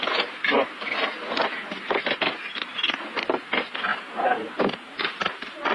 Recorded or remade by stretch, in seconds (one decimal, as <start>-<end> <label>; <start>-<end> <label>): 0.0-5.7 recorded